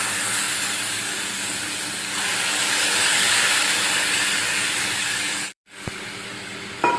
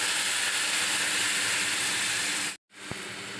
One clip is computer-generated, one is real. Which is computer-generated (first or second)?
first